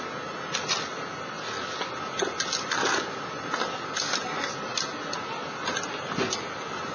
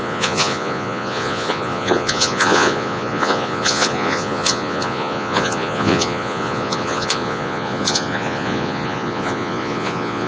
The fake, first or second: second